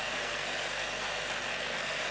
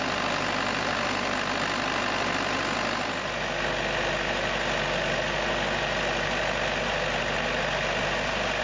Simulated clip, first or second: first